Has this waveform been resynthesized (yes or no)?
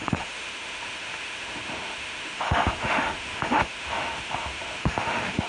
yes